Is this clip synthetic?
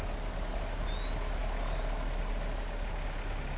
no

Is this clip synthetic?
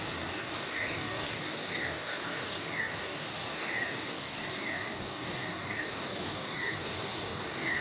yes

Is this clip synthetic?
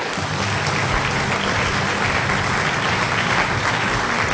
no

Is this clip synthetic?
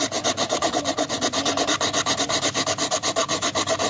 no